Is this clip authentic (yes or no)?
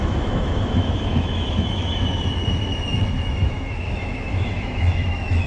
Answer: no